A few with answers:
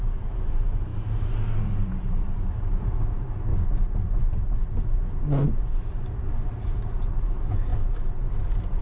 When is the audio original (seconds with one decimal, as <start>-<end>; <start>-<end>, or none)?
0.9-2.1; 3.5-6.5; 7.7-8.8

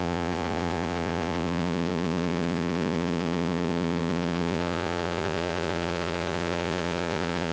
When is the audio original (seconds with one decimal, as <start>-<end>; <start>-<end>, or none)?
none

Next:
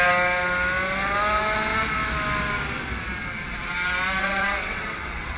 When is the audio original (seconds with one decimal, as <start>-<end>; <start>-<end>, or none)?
0.0-4.2